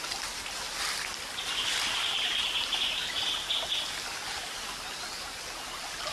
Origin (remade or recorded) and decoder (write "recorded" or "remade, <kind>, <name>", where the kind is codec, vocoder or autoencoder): recorded